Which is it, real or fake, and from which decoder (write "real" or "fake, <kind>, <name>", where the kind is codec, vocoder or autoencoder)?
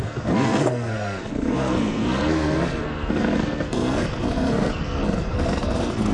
fake, codec, SNAC